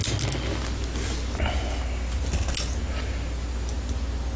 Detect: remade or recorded recorded